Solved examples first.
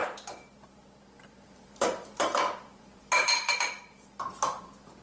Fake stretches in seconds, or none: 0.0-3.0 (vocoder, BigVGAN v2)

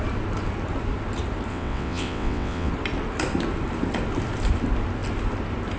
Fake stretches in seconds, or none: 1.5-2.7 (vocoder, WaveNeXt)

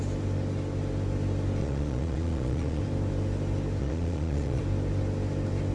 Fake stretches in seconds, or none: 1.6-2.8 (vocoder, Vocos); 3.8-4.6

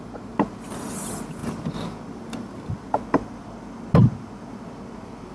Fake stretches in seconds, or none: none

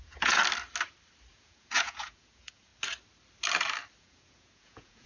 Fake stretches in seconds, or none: 0.0-0.4 (vocoder, Vocos); 1.3-2.7; 4.0-5.1

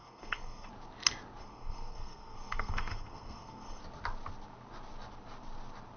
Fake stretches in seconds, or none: 0.0-0.7 (codec, SNAC); 1.4-3.8

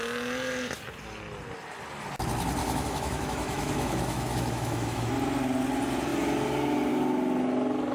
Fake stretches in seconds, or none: 2.6-5.1 (autoencoder, DAC-VAE)

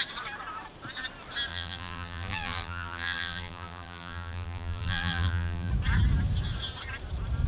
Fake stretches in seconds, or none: 1.5-5.7 (vocoder, BigVGAN v2)